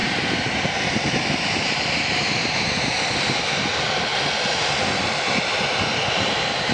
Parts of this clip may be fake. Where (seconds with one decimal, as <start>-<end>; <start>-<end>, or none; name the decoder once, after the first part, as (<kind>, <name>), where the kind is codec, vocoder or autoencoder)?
0.0-3.4 (vocoder, BigVGAN v2); 5.9-6.7